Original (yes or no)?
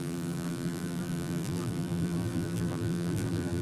no